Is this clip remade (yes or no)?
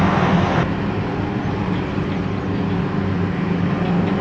no